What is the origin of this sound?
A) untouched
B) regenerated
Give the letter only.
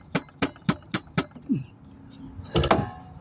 A